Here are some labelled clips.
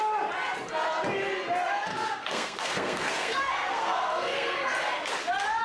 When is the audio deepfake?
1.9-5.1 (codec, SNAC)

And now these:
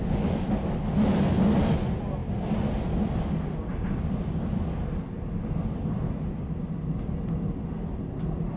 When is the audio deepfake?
none